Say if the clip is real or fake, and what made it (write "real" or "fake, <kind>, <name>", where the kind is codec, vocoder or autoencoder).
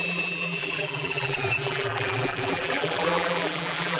fake, vocoder, BigVGAN v2